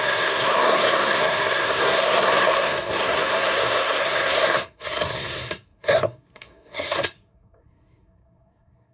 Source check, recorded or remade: remade